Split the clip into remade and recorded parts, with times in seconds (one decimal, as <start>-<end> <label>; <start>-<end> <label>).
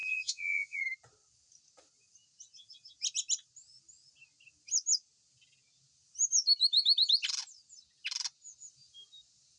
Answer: 0.0-0.8 remade; 0.8-9.6 recorded